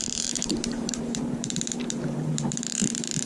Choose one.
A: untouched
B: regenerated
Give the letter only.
B